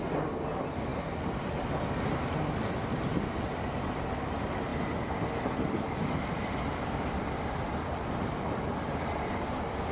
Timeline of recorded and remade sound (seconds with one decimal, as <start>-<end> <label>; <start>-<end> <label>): 0.0-9.9 recorded